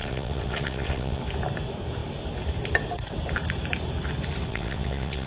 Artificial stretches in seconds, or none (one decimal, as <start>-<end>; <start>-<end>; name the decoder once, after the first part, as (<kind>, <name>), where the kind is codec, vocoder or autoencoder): 0.0-1.2 (vocoder, WaveNeXt); 4.5-5.3